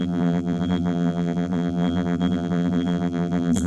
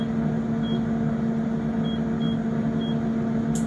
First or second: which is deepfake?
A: first